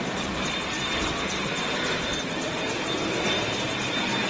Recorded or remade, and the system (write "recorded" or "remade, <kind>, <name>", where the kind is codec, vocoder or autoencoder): recorded